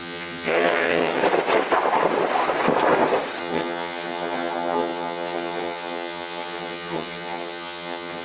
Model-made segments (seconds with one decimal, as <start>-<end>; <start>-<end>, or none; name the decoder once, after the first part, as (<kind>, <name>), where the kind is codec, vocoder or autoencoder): 0.0-1.2 (vocoder, HiFi-GAN); 3.4-8.2